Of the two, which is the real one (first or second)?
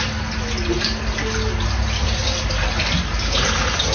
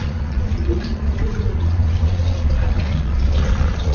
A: first